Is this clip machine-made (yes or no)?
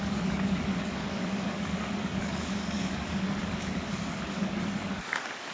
yes